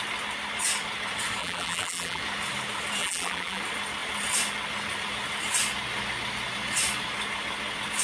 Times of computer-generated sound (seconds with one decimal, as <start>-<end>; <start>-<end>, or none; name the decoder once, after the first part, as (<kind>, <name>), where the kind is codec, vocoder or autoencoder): 1.4-2.2 (vocoder, BigVGAN v2); 3.0-3.6